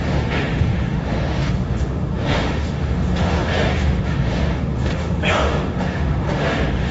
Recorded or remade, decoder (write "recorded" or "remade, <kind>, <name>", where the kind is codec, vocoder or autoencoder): remade, autoencoder, DAC-VAE